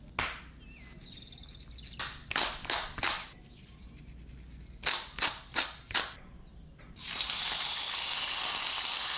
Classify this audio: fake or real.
real